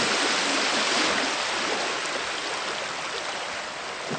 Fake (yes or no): no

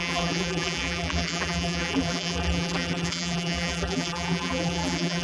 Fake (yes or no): yes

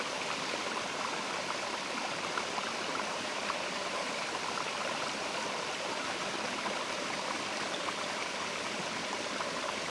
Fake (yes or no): yes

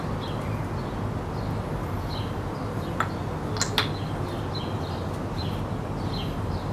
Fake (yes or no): no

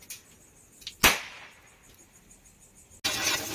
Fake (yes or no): no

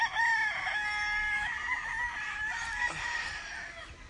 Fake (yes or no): no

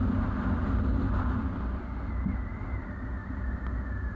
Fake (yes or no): no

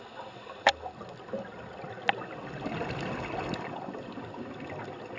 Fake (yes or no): no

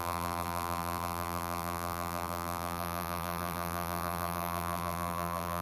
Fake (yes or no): yes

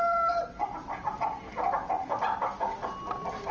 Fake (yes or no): no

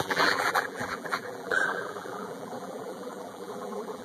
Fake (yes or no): yes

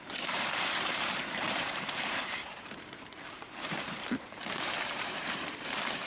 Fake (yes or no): yes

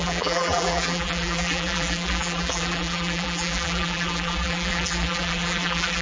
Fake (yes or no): yes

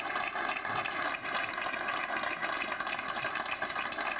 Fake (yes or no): no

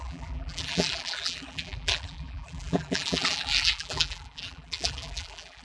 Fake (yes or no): yes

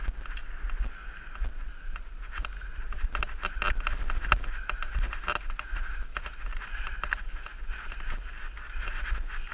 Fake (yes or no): no